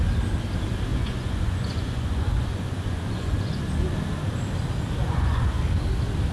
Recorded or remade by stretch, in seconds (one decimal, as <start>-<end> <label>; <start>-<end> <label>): 0.0-0.9 recorded; 0.9-3.6 remade; 3.6-5.0 recorded; 5.0-5.6 remade; 5.6-6.3 recorded